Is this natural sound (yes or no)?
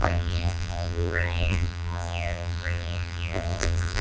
no